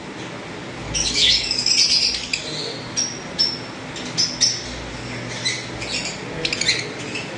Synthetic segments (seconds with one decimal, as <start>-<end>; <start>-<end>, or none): 1.0-1.7